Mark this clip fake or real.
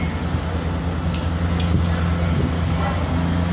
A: real